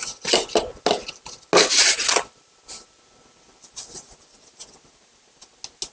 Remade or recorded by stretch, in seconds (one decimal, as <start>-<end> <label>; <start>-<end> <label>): 0.0-5.9 recorded